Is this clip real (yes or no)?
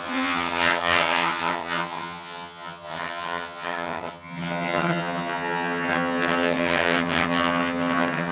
no